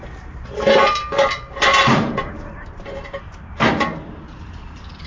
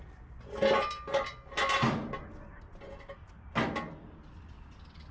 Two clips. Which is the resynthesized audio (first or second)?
first